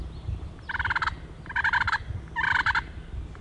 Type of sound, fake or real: real